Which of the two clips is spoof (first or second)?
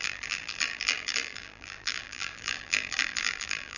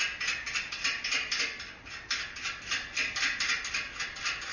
first